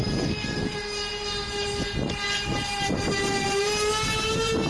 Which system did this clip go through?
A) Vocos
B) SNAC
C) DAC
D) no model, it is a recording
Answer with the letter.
D